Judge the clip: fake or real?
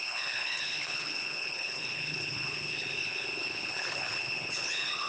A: fake